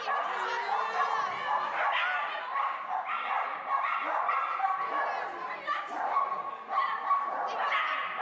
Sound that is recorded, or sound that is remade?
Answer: recorded